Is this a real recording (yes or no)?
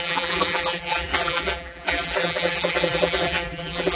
no